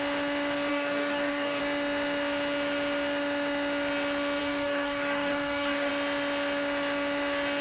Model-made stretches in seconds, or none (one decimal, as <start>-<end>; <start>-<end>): 0.7-1.6; 4.4-5.9